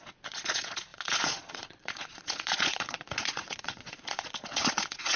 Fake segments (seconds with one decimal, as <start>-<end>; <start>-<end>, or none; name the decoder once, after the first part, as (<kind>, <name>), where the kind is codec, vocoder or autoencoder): 0.0-5.2 (vocoder, Vocos)